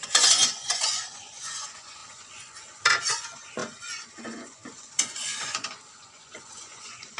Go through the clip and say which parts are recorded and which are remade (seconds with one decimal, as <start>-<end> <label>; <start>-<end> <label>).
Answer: 0.0-7.2 remade